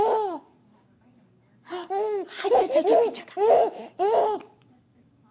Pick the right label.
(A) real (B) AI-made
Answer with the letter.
B